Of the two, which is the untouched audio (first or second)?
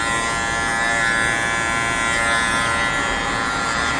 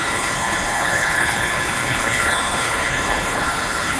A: first